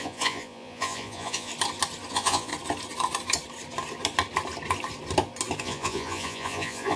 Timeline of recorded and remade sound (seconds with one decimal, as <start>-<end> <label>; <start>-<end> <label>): 0.0-1.5 remade; 1.5-2.1 recorded; 2.1-2.5 remade; 2.5-5.6 recorded; 5.6-7.0 remade